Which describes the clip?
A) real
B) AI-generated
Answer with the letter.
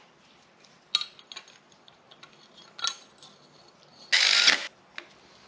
A